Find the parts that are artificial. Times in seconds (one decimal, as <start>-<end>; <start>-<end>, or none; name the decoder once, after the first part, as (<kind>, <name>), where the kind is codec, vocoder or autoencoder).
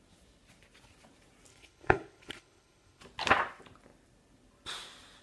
1.5-3.0 (codec, HILCodec)